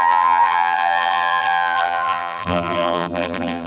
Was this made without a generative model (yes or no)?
no